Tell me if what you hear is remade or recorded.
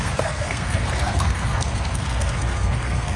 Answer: remade